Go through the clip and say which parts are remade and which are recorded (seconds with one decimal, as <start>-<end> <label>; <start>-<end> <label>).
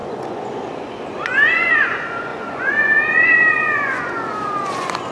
0.0-5.1 remade